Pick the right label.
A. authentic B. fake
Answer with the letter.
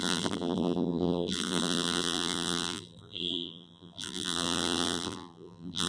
B